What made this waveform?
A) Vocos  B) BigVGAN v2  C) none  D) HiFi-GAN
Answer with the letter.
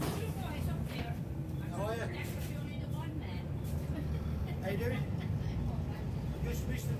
B